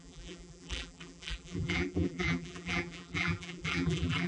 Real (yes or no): no